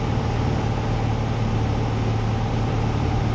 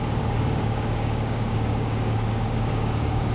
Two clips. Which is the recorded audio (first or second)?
first